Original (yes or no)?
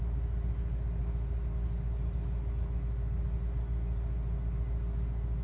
yes